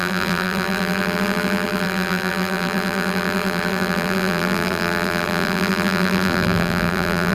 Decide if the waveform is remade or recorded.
remade